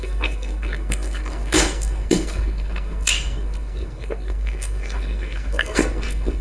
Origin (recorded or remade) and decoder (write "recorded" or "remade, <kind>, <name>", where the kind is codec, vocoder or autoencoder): remade, codec, SNAC